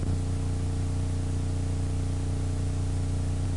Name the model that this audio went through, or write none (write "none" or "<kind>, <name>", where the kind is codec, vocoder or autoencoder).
none